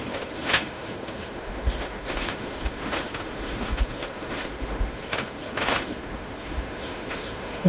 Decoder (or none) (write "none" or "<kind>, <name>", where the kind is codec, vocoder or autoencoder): autoencoder, DAC-VAE